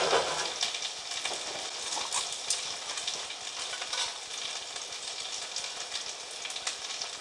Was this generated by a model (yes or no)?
no